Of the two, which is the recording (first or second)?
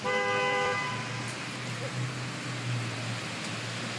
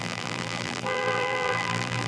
first